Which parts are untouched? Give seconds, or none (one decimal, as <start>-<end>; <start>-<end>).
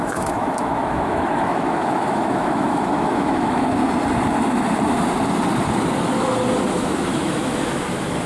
3.8-6.7